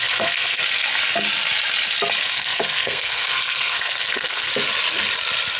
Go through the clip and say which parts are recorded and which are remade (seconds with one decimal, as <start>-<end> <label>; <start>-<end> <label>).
0.0-0.6 remade; 0.6-2.3 recorded; 2.3-4.5 remade; 4.5-5.6 recorded